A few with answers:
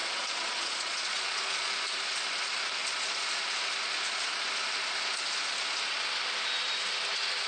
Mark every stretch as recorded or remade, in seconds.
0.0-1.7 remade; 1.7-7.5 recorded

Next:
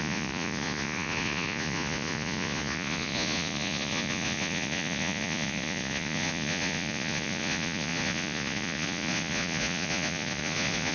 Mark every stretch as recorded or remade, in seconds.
0.0-10.9 remade

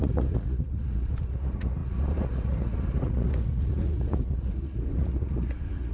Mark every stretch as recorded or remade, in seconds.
0.0-5.9 remade

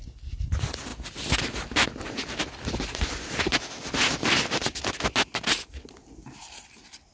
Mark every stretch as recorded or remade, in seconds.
0.0-7.1 recorded